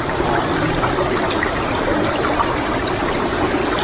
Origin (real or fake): real